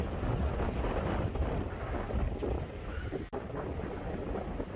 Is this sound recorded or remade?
recorded